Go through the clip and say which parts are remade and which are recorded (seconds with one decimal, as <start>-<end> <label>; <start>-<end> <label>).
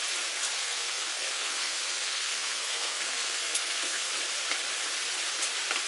0.0-0.6 recorded; 0.6-4.1 remade; 4.1-5.9 recorded